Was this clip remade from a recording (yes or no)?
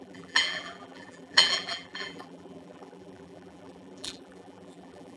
yes